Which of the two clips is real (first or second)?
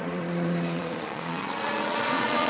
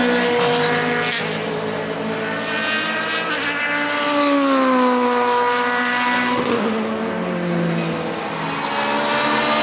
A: second